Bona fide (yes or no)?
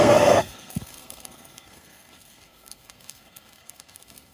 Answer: no